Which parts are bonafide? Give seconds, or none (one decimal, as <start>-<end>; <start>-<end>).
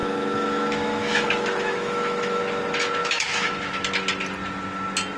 2.4-3.0; 3.8-5.2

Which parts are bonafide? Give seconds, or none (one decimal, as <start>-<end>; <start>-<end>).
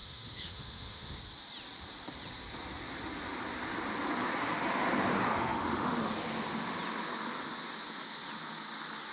1.2-5.3; 6.0-9.1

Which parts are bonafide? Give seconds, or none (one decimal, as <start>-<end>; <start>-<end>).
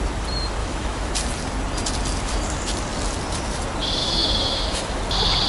0.0-0.6; 1.1-4.0; 5.0-5.5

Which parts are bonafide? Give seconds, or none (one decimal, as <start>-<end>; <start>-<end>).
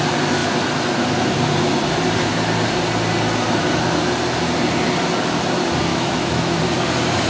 0.0-5.9; 6.6-7.3